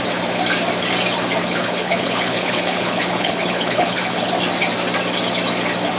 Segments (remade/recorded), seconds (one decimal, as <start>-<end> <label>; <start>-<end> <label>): 0.0-1.4 recorded; 1.4-4.3 remade; 4.3-6.0 recorded